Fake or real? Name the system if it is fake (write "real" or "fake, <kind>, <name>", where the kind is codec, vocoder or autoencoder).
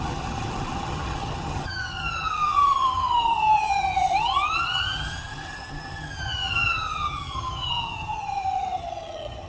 fake, vocoder, HiFi-GAN